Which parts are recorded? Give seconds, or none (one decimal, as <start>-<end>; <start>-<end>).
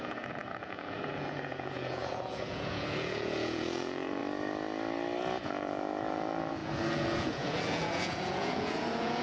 4.2-5.2